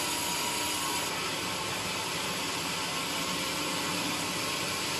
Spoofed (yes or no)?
no